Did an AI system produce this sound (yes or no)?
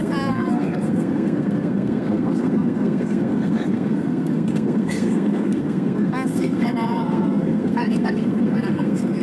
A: yes